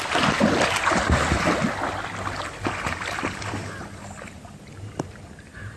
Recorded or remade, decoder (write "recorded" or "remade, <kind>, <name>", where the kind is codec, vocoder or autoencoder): recorded